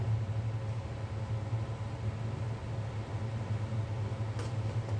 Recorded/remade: recorded